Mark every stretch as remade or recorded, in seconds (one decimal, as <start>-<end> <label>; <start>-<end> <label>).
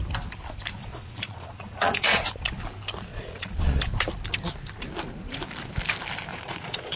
0.0-0.8 recorded; 0.8-2.3 remade; 2.3-3.1 recorded; 3.1-3.8 remade; 3.8-6.3 recorded; 6.3-7.0 remade